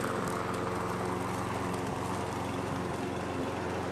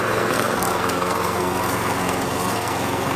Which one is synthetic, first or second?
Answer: second